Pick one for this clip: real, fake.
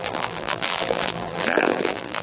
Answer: fake